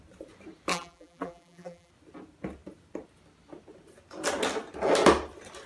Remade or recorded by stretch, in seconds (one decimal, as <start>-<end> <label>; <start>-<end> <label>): 0.0-0.7 recorded; 0.7-1.9 remade; 1.9-5.7 recorded